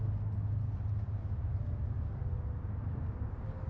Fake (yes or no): no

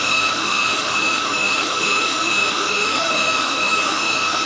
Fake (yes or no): yes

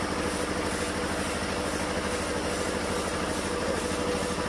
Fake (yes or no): no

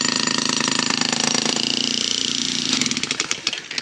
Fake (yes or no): no